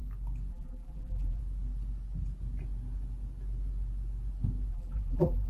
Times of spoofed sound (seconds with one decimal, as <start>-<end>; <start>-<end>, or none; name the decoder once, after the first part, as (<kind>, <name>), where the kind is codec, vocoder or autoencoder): 0.5-1.4 (vocoder, BigVGAN v2); 4.7-5.5